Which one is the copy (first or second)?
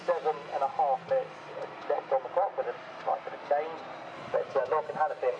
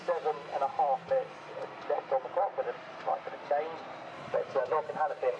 second